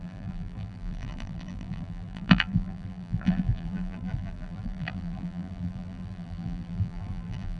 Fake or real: fake